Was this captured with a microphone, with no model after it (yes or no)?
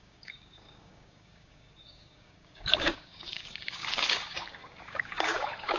no